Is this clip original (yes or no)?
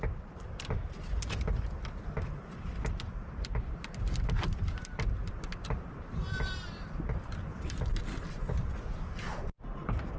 no